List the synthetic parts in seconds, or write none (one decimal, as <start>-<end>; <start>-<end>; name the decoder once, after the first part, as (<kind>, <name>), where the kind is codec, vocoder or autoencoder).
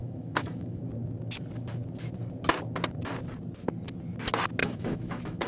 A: 0.0-0.8 (autoencoder, DAC-VAE); 4.6-5.5